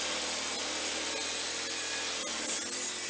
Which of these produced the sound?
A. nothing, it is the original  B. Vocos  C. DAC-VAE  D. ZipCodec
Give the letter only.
A